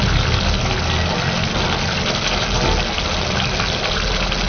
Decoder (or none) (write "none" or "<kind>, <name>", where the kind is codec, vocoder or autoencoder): none